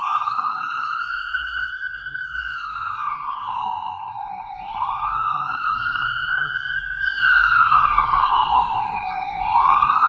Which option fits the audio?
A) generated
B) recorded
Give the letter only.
A